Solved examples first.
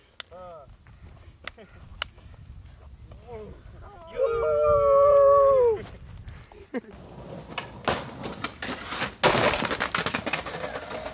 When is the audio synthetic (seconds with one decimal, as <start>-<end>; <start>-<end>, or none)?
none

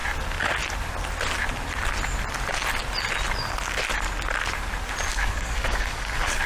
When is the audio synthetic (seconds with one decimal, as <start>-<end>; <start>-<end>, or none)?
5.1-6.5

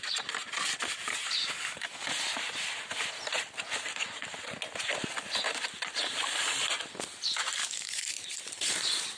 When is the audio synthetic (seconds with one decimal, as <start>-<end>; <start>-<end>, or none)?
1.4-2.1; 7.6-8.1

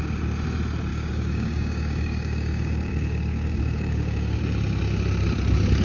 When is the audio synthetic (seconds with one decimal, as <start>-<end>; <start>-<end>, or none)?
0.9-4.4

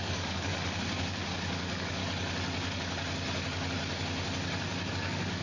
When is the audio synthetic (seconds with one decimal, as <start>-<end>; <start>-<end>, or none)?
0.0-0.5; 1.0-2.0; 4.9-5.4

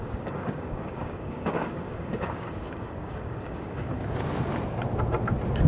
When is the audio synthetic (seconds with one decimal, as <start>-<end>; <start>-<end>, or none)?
0.0-4.0

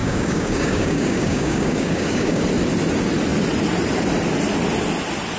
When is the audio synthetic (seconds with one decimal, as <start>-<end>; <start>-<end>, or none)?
0.0-2.4